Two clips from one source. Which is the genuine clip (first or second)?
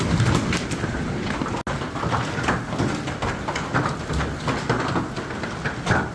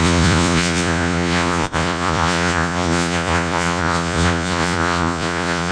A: first